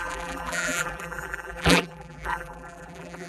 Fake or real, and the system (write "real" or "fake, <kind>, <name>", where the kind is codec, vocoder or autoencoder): fake, vocoder, BigVGAN v2